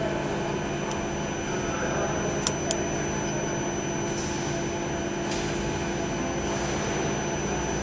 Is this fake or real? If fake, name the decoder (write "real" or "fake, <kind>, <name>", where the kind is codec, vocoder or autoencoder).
real